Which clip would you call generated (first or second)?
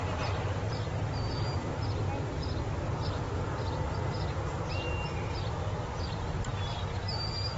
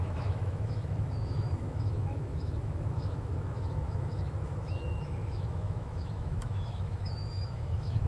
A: second